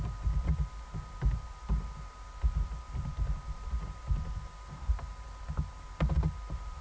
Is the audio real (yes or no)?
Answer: no